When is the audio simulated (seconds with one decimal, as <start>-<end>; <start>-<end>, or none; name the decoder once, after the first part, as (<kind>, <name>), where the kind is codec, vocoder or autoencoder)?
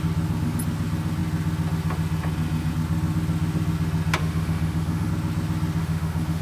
4.2-5.1 (autoencoder, DAC-VAE); 5.8-6.4